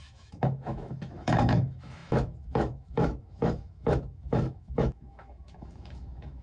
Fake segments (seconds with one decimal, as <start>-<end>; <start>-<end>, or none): 0.0-6.4